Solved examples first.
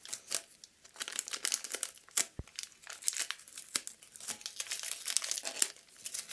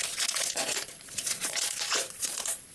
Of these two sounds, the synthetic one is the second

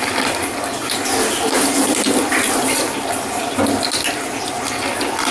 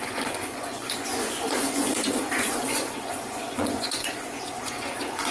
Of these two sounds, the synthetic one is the second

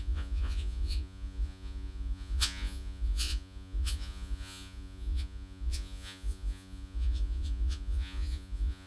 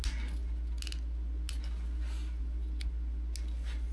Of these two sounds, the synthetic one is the first